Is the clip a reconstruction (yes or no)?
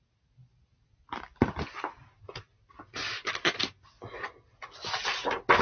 no